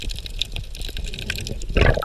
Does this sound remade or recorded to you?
recorded